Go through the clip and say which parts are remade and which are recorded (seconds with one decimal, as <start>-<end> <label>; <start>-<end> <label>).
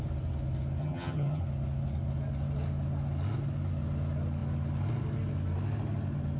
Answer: 0.0-0.8 recorded; 0.8-1.4 remade; 1.4-6.4 recorded